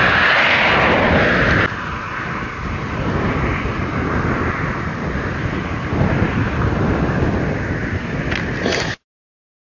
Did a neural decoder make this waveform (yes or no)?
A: no